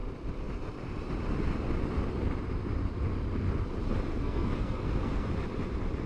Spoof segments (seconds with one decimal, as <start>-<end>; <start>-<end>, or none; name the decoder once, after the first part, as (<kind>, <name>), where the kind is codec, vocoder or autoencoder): 4.1-5.3 (codec, SNAC)